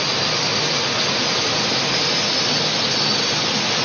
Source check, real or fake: real